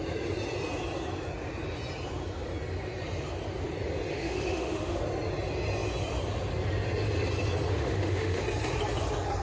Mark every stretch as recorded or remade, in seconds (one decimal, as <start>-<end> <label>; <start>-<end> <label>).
0.0-4.1 recorded; 4.1-5.0 remade; 5.0-7.7 recorded; 7.7-8.4 remade; 8.4-9.4 recorded